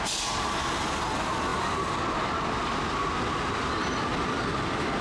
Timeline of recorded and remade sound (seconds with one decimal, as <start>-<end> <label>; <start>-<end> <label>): 0.0-5.0 recorded